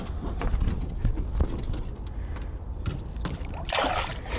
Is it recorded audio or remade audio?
recorded